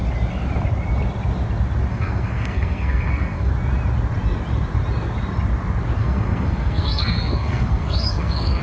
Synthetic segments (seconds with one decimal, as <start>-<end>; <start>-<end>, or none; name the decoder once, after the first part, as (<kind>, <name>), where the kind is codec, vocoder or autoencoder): 1.9-3.5 (codec, SNAC); 6.0-8.6